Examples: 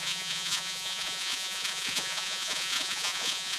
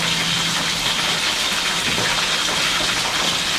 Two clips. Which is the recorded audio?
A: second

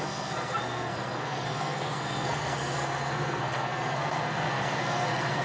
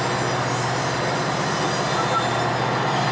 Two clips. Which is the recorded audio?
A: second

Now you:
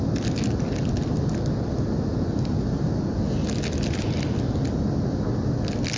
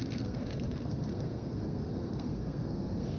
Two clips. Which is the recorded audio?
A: first